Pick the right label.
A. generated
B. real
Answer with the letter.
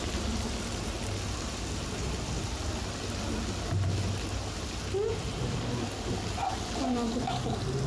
B